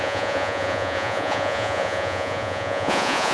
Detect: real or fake fake